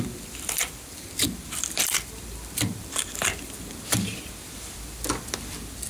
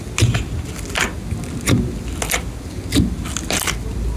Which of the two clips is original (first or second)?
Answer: second